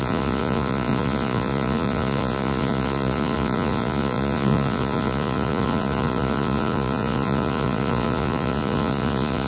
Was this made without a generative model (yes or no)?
no